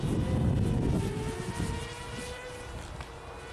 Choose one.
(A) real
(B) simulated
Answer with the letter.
A